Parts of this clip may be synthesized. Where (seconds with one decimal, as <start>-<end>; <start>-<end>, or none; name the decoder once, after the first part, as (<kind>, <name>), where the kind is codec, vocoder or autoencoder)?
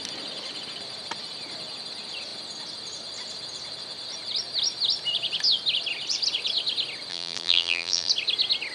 7.1-8.1 (vocoder, BigVGAN v2)